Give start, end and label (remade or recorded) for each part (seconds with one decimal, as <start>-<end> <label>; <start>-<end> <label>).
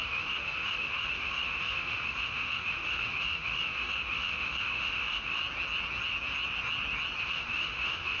0.0-5.4 remade; 5.4-7.2 recorded; 7.2-8.2 remade